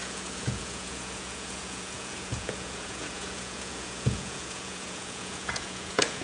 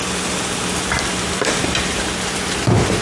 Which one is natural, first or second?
second